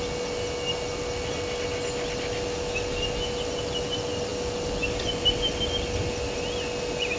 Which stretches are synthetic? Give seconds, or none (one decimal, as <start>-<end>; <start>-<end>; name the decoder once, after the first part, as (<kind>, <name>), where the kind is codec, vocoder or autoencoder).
none